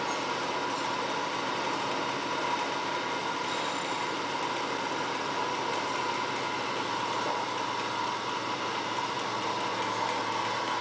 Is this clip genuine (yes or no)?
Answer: yes